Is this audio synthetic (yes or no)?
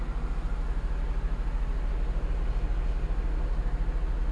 no